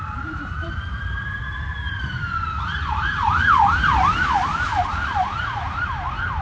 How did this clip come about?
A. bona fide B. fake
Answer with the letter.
B